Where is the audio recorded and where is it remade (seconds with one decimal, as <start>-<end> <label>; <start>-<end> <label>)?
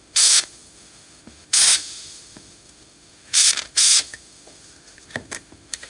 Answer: 0.0-5.9 remade